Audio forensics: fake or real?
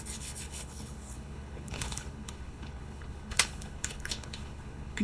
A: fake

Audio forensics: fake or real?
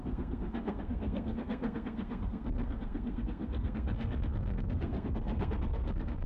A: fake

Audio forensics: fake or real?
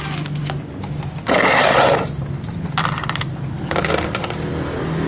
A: real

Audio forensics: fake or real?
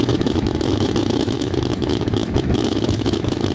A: fake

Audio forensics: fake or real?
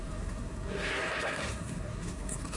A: fake